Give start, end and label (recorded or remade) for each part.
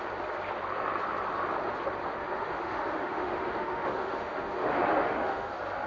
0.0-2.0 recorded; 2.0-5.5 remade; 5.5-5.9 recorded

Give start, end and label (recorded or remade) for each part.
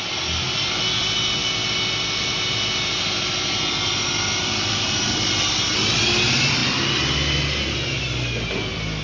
0.0-9.0 recorded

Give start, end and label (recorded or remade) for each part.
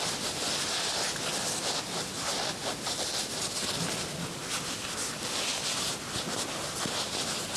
0.0-7.6 recorded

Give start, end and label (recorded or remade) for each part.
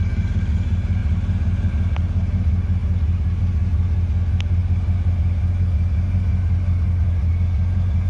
0.0-8.1 recorded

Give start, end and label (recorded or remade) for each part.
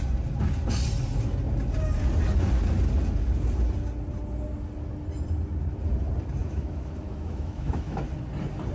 0.0-6.4 recorded; 6.4-8.0 remade; 8.0-8.7 recorded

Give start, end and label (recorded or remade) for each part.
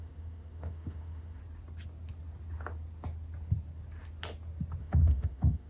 0.0-1.4 remade; 1.4-4.8 recorded; 4.8-5.7 remade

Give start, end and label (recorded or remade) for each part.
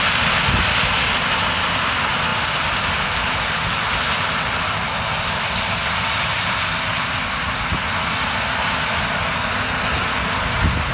0.0-10.9 recorded